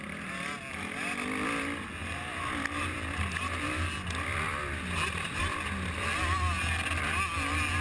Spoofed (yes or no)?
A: no